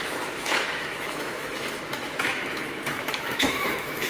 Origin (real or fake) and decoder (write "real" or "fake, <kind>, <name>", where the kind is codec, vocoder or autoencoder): fake, autoencoder, DAC-VAE